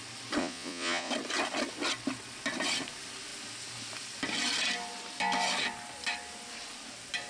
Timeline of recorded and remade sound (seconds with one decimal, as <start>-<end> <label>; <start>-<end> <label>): 0.0-0.4 recorded; 0.4-1.1 remade; 1.1-7.3 recorded